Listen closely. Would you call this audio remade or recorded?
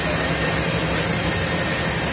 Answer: recorded